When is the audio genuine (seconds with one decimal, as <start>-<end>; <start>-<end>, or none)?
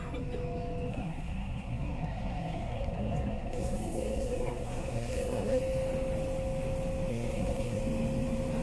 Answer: 0.0-0.9; 5.6-7.1; 7.8-8.6